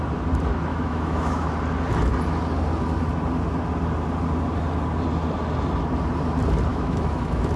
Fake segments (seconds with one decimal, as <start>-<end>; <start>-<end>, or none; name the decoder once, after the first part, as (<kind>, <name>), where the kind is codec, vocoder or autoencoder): 0.7-1.5 (autoencoder, DAC-VAE); 6.7-7.6